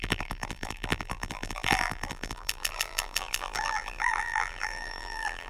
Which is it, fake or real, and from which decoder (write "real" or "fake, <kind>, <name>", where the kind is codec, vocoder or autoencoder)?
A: fake, vocoder, BigVGAN v2